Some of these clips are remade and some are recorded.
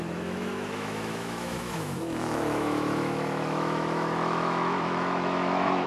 remade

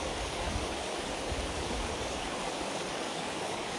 remade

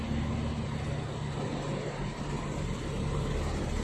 recorded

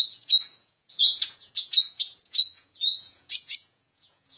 remade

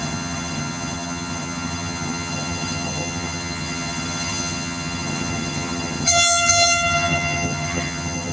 remade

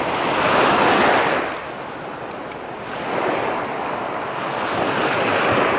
recorded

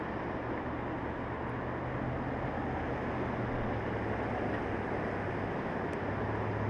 recorded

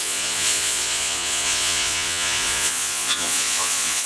remade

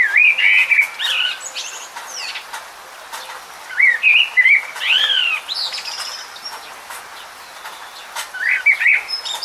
recorded